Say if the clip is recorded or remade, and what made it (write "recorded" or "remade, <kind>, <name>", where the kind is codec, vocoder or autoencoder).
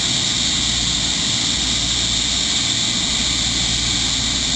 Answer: recorded